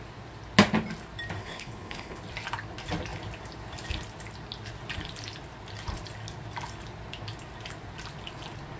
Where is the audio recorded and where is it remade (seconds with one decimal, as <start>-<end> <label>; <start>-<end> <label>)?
0.0-1.4 recorded; 1.4-2.2 remade; 2.2-8.8 recorded